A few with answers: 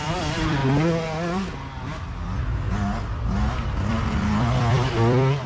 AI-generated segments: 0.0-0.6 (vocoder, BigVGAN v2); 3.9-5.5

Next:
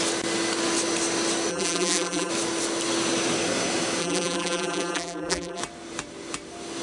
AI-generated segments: 1.5-2.3 (vocoder, BigVGAN v2); 4.0-5.6

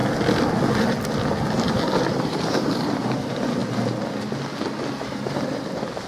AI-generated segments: 2.1-3.6 (vocoder, BigVGAN v2); 4.9-6.1

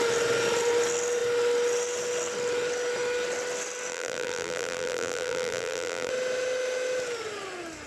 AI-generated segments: 3.9-6.1 (vocoder, BigVGAN v2)

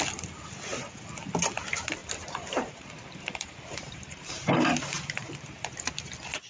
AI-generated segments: 2.0-5.9 (vocoder, BigVGAN v2)

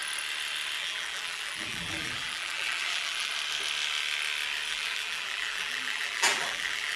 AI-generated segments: 0.8-3.3 (vocoder, BigVGAN v2); 4.7-7.0

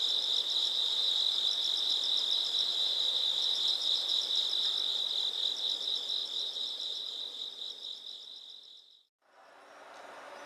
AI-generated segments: 0.6-1.1 (vocoder, BigVGAN v2); 2.7-4.2; 6.2-7.2

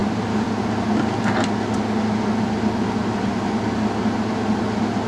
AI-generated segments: none